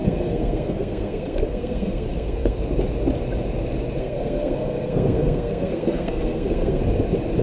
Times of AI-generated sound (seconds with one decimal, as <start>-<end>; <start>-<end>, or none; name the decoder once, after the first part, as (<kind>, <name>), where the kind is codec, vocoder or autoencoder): 0.0-2.6 (codec, SNAC); 4.0-6.8